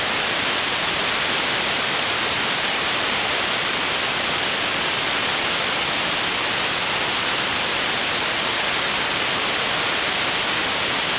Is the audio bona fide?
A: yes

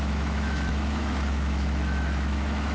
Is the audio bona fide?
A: no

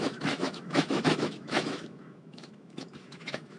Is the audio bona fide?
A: no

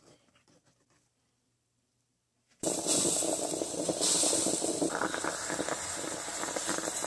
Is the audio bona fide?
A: no